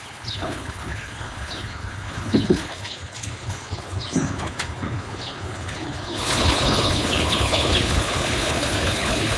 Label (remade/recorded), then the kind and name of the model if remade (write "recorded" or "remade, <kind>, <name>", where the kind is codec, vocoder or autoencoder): remade, codec, HILCodec